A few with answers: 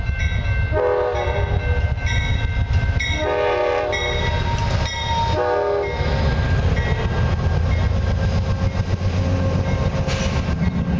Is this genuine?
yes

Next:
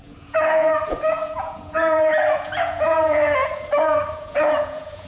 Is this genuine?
no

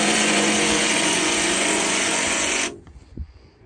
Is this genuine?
no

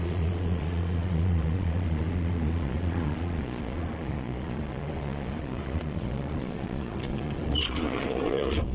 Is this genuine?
no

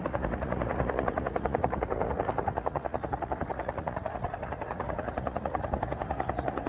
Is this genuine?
no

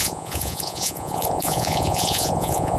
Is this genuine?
no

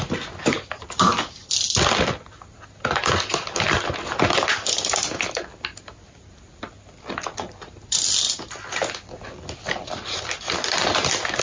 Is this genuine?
yes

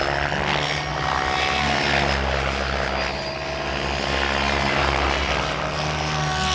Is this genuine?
yes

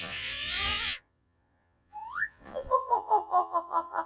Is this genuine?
no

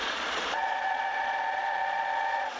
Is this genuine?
no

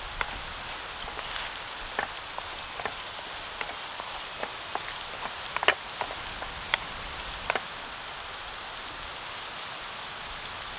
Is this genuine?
yes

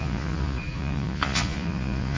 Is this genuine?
no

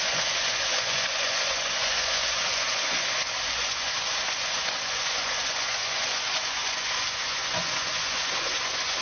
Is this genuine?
no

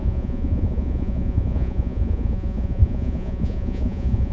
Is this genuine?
no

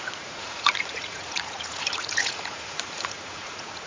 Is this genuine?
no